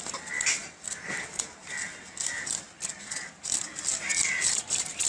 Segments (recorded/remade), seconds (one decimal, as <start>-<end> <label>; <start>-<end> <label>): 0.0-5.1 recorded